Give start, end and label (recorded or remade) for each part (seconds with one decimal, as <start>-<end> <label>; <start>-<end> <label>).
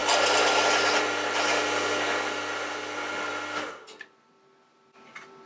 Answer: 0.0-5.5 recorded